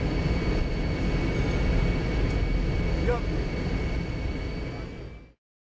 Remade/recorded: recorded